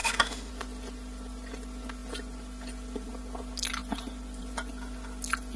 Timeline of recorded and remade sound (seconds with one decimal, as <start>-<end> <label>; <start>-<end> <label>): 0.0-0.5 remade; 0.5-5.6 recorded